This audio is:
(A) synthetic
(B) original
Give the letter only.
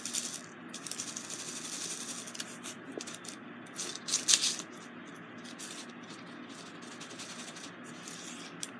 B